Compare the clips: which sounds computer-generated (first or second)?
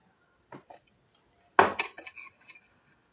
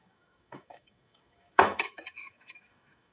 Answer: second